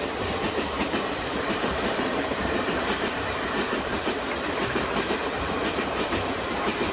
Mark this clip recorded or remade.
remade